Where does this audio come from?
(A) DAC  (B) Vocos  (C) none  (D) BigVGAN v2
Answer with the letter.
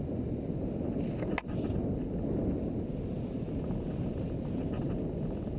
C